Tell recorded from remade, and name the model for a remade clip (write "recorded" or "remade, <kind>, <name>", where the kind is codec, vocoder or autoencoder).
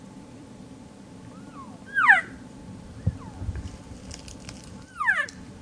remade, vocoder, BigVGAN v2